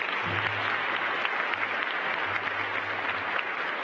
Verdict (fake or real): real